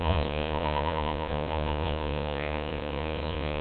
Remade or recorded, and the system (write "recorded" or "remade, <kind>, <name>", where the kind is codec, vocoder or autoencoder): remade, vocoder, Vocos